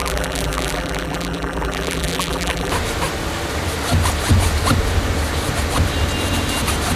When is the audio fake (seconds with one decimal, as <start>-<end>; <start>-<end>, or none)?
0.0-2.7